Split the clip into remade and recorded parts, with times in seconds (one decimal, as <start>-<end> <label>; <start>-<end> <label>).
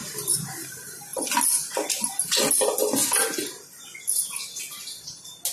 0.0-5.5 recorded